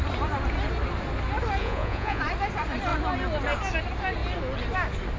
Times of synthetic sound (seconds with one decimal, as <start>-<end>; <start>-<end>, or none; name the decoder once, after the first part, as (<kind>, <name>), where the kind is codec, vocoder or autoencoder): 1.6-2.2 (vocoder, Vocos)